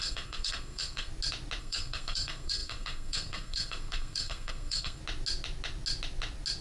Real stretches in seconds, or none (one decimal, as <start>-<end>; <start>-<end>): 1.1-1.6; 5.0-6.6